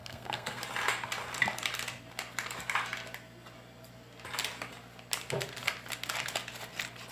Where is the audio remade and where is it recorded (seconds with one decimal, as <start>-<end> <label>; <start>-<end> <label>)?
0.0-0.6 remade; 0.6-7.1 recorded